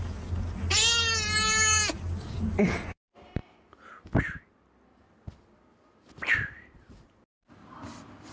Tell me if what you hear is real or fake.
real